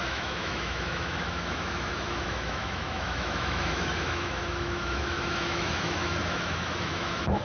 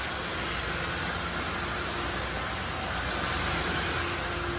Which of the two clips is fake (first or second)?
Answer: first